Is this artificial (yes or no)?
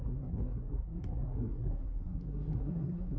yes